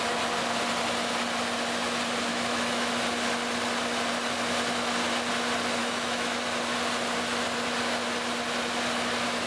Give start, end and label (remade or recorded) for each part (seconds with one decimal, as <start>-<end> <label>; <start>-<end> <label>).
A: 0.0-2.3 recorded; 2.3-2.9 remade; 2.9-5.8 recorded; 5.8-6.4 remade; 6.4-9.5 recorded